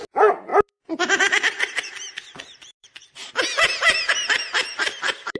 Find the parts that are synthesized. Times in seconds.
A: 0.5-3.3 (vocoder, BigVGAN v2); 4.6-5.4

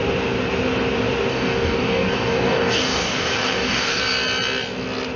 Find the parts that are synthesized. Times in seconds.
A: 1.3-4.0 (codec, DAC)

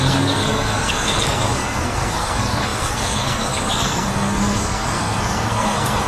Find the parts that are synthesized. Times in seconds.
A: 0.0-6.1 (codec, SNAC)

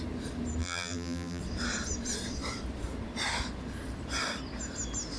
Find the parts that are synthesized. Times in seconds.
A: 0.6-1.4 (vocoder, BigVGAN v2)

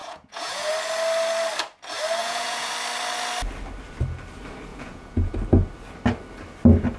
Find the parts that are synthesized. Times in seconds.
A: 0.0-0.7 (vocoder, Vocos); 2.2-2.7; 4.7-5.3

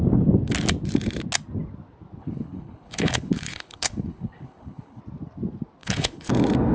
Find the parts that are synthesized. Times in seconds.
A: 2.2-5.0 (codec, HILCodec); 5.8-6.3